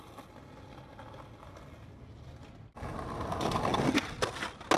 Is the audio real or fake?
real